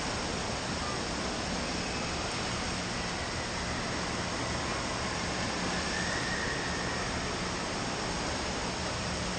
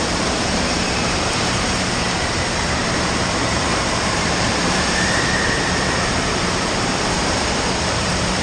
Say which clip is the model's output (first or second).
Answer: second